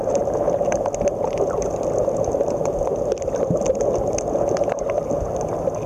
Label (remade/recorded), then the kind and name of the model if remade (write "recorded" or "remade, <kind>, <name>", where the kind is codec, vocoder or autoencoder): recorded